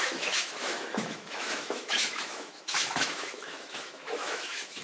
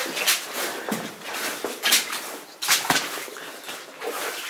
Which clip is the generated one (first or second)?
first